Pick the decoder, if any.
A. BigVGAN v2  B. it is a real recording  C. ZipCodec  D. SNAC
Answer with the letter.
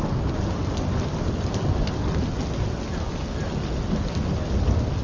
B